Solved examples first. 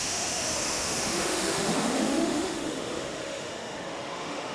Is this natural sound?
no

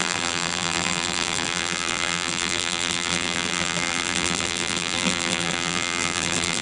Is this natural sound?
no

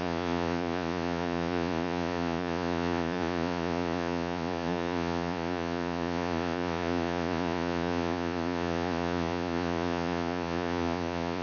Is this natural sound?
no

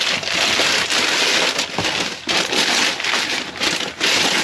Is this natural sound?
yes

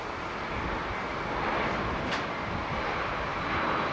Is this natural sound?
yes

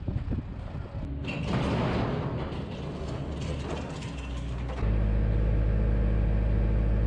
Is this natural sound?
yes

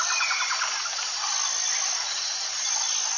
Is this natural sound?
yes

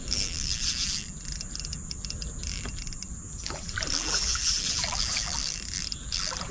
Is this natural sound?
no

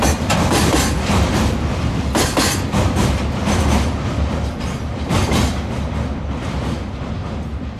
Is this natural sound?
yes